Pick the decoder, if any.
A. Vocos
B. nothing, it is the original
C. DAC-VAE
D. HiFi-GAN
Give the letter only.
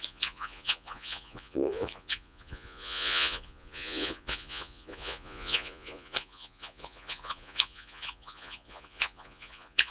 A